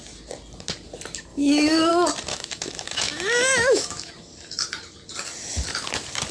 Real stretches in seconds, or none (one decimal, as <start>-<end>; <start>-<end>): 0.0-1.3; 1.9-2.3; 4.1-6.3